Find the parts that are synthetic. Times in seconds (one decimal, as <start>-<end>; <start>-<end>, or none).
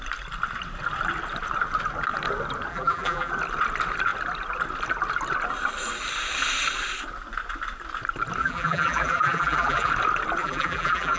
2.7-3.3; 8.4-9.9; 10.4-11.2